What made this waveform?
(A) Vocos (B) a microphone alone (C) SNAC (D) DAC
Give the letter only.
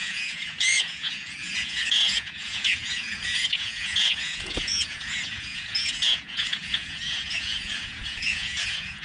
A